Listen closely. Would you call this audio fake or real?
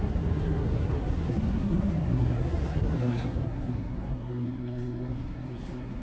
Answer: fake